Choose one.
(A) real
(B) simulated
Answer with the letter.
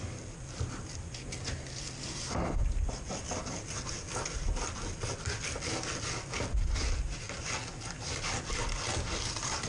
A